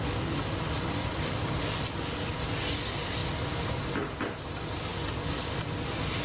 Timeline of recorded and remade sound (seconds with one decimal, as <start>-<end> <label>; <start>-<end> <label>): 0.0-6.2 recorded